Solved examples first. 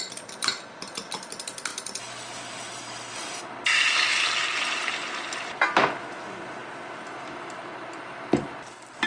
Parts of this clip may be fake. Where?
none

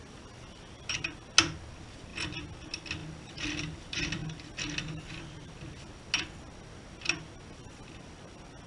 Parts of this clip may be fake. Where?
none

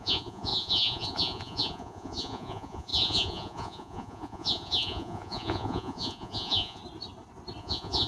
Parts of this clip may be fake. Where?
0.0-6.8; 7.6-8.1

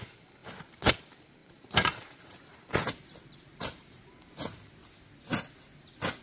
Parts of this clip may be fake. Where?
0.4-0.9; 1.4-4.8

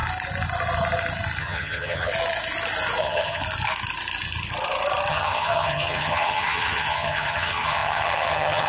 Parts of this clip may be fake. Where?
1.4-2.1; 3.0-3.4; 5.1-8.7

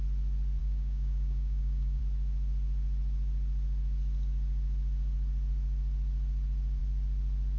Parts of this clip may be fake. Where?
0.6-2.0